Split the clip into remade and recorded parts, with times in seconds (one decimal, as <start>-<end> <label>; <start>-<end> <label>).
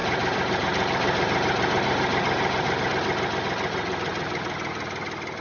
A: 0.0-2.9 remade; 2.9-5.4 recorded